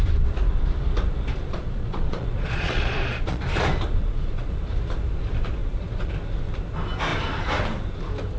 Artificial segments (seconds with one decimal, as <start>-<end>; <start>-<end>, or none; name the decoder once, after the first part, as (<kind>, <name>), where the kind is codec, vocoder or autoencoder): 1.3-3.4 (vocoder, Vocos); 4.0-4.5; 5.6-6.1